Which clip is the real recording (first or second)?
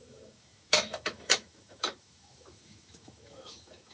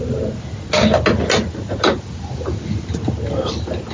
second